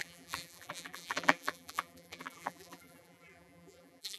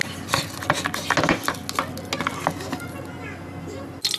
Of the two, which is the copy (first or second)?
first